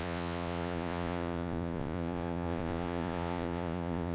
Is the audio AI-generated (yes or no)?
yes